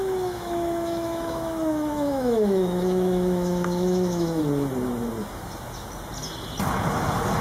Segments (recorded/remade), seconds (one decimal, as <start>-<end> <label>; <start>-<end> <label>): 0.0-4.4 remade; 4.4-7.4 recorded